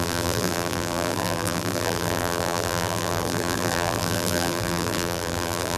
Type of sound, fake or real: fake